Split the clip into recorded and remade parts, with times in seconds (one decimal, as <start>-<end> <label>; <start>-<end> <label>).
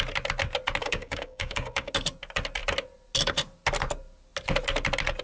0.0-0.8 recorded; 0.8-1.9 remade; 1.9-5.2 recorded